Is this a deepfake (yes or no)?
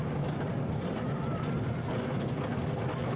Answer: no